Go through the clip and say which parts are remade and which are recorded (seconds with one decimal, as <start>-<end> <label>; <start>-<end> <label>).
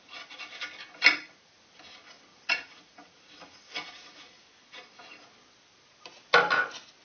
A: 0.0-1.1 recorded; 1.1-1.6 remade; 1.6-2.3 recorded; 2.3-3.1 remade; 3.1-3.7 recorded; 3.7-4.4 remade; 4.4-7.0 recorded